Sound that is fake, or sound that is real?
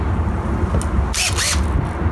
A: real